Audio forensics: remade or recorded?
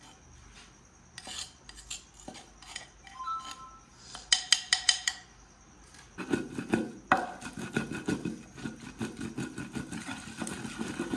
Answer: recorded